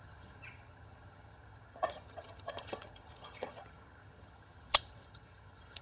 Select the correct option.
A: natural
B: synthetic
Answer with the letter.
B